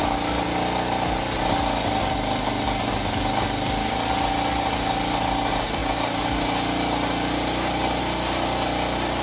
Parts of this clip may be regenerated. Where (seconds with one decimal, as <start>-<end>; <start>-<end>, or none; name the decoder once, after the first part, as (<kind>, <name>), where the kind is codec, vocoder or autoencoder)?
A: none